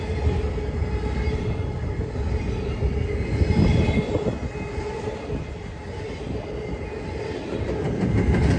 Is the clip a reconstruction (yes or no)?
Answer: no